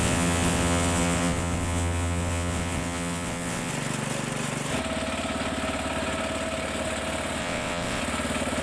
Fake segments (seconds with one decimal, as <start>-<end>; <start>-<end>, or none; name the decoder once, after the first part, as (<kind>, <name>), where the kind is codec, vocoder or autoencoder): 0.0-3.7 (vocoder, WaveNeXt); 7.4-8.0

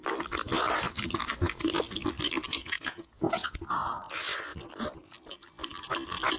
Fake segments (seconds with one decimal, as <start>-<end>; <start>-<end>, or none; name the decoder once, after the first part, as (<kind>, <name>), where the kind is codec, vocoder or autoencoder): 2.5-3.6 (vocoder, Vocos)

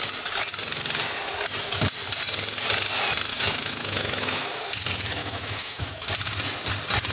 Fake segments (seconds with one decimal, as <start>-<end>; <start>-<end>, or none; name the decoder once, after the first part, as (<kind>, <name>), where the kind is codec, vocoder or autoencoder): 3.3-4.7 (autoencoder, DAC-VAE); 5.2-6.1

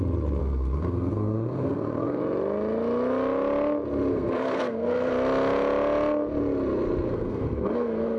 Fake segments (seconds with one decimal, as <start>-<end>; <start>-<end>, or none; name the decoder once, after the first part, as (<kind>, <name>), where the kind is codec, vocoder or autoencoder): 0.4-2.2 (codec, SNAC); 4.1-5.1; 7.1-8.2